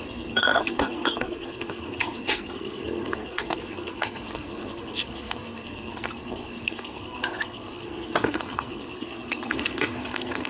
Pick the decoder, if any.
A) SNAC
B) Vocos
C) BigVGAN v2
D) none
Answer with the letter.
A